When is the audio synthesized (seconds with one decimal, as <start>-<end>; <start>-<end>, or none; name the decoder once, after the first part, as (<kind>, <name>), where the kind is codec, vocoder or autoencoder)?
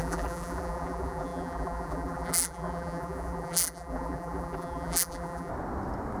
0.0-5.5 (vocoder, BigVGAN v2)